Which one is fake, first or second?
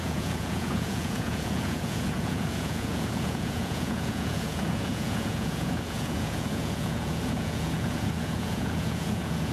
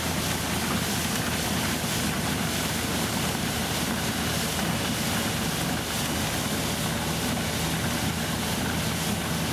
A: first